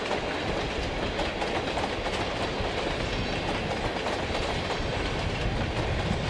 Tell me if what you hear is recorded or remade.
recorded